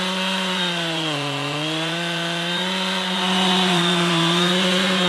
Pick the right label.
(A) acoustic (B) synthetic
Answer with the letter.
B